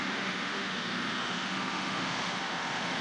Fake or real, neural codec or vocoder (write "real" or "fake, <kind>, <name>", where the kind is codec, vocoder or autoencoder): fake, autoencoder, DAC-VAE